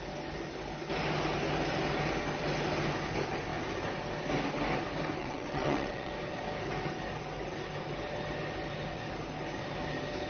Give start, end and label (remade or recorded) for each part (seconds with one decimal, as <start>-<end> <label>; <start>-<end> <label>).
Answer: 0.0-5.2 recorded; 5.2-6.1 remade; 6.1-10.3 recorded